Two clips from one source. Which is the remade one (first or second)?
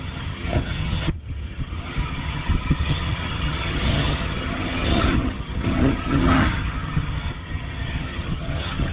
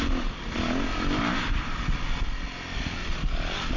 first